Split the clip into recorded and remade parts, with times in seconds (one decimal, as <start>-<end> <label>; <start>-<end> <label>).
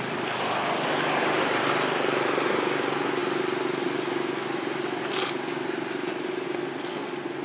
0.0-7.4 recorded